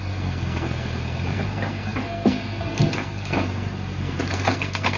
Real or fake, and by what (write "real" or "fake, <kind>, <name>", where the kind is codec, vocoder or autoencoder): fake, codec, SNAC